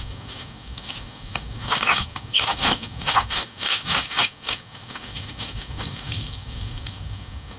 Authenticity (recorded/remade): remade